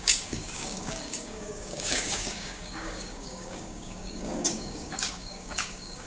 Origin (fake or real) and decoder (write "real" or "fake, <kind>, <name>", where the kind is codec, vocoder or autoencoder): fake, codec, DAC